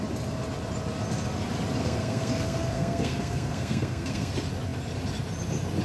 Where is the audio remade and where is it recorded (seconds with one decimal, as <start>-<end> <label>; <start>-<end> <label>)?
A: 0.0-1.8 recorded; 1.8-4.3 remade; 4.3-5.8 recorded